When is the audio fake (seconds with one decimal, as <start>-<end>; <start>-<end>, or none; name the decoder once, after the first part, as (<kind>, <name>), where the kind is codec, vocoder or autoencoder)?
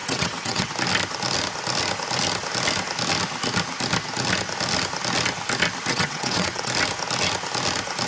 0.0-0.7 (vocoder, WaveNeXt); 5.9-6.7